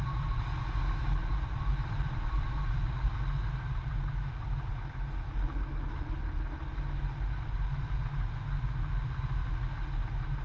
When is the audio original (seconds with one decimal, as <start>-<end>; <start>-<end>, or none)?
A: 0.0-1.2; 2.6-10.4